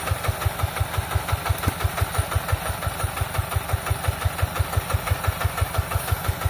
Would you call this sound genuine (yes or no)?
yes